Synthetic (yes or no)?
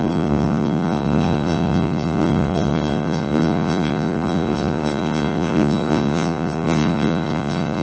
yes